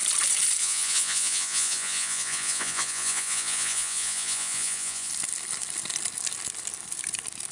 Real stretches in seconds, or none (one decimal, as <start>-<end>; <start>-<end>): 0.0-0.6; 5.1-7.5